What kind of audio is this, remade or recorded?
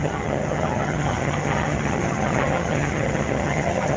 remade